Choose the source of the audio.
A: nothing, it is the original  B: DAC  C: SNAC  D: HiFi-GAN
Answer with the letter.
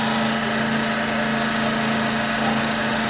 A